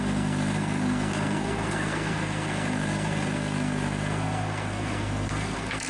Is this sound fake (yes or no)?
yes